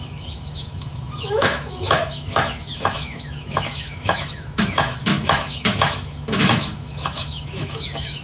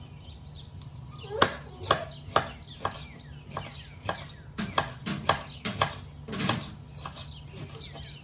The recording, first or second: second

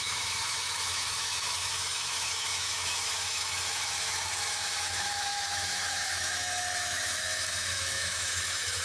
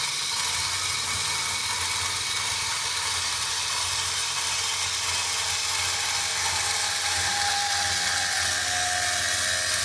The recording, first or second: second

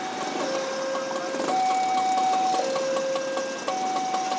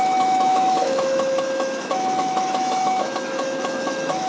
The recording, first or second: first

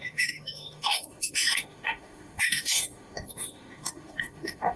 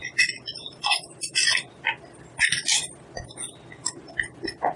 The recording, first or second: second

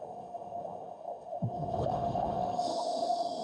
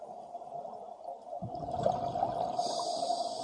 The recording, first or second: second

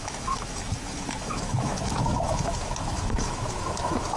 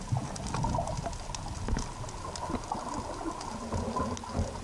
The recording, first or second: second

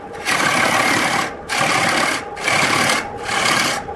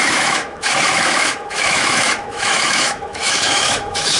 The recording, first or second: first